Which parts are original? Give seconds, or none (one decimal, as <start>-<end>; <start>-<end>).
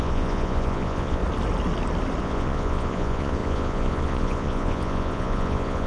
1.2-2.2